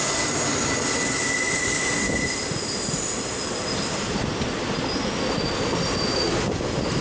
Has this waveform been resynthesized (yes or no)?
no